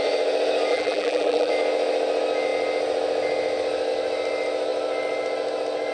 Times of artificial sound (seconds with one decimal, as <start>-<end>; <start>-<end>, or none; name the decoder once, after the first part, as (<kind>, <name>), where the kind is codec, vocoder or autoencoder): 0.7-1.5 (vocoder, BigVGAN v2)